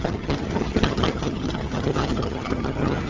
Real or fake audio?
fake